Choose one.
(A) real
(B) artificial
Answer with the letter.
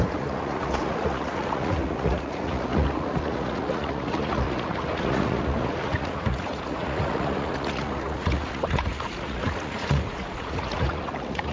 B